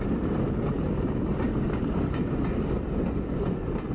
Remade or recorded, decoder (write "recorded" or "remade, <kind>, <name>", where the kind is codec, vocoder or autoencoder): recorded